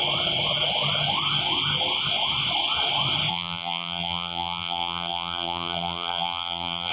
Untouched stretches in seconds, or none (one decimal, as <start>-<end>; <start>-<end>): 0.0-3.3